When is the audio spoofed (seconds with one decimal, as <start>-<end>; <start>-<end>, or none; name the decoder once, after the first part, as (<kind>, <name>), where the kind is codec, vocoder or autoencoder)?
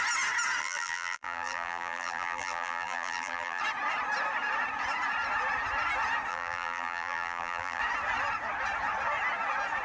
0.6-3.6 (vocoder, BigVGAN v2); 6.3-7.8